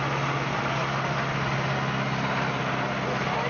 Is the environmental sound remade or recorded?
recorded